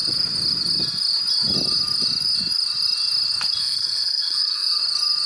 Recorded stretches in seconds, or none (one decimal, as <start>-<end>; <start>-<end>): 0.0-3.6; 4.8-5.3